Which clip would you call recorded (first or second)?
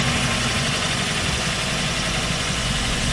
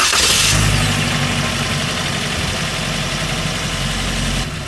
second